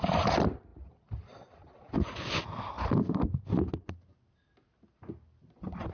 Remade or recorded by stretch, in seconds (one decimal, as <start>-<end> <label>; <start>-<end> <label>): 0.0-5.9 recorded

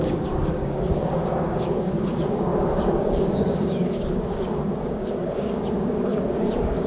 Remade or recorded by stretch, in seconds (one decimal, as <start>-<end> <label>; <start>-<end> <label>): 0.0-6.9 remade

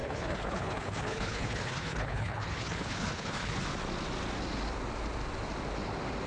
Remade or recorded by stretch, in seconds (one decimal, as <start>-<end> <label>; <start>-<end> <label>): 0.0-3.6 remade; 3.6-6.3 recorded

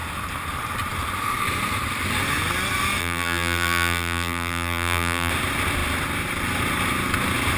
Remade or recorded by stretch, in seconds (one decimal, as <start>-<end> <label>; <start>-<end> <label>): 0.0-3.0 recorded; 3.0-5.3 remade; 5.3-7.6 recorded

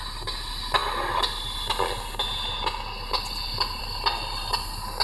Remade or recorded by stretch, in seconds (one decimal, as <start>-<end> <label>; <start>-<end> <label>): 0.0-5.0 recorded

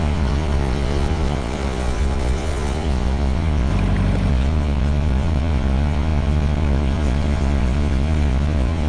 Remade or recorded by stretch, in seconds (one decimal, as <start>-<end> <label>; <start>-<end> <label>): 0.0-3.7 remade; 3.7-4.3 recorded; 4.3-8.9 remade

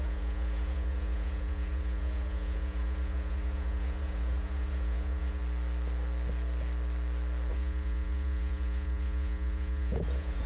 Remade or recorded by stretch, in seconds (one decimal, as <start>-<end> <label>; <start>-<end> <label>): 0.0-5.4 remade; 5.4-7.5 recorded; 7.5-10.5 remade